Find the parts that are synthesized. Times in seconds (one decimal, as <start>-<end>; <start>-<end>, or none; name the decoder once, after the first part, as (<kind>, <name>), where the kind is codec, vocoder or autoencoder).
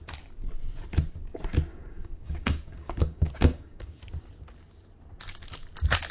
1.7-4.0 (codec, DAC)